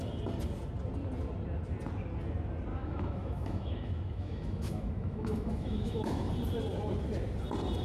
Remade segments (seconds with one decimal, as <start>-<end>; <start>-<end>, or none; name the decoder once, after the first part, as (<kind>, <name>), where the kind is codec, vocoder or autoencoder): 2.7-6.3 (autoencoder, DAC-VAE)